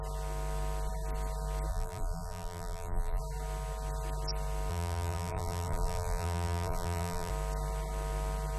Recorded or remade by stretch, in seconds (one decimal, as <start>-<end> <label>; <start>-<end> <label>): 0.0-1.7 recorded; 1.7-3.2 remade; 3.2-4.7 recorded; 4.7-7.3 remade; 7.3-8.6 recorded